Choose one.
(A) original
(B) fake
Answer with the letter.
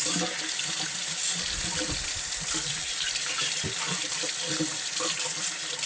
A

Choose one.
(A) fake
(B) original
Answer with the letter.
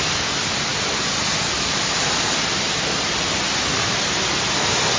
B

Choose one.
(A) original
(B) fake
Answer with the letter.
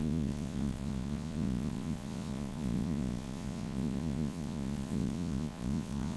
B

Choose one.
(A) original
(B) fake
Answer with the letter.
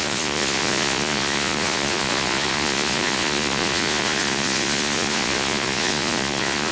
B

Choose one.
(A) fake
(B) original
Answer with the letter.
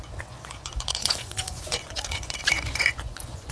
A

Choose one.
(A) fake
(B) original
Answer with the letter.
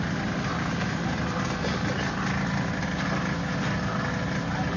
B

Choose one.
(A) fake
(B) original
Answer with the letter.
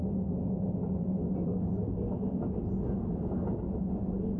B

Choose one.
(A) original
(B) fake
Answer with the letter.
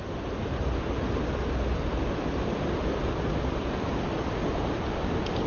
A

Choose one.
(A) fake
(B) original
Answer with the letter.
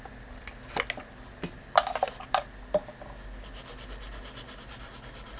B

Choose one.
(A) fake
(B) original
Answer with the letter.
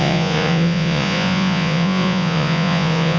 A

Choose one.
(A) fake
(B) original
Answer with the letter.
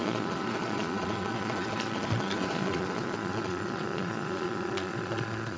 A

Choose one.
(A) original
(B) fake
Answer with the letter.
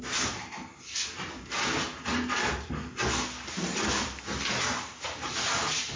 A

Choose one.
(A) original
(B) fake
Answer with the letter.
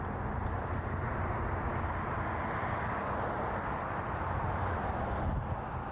A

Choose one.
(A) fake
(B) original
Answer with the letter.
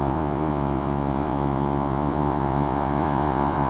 A